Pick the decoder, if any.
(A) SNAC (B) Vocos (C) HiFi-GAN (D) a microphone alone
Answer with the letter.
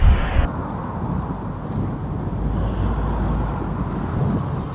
D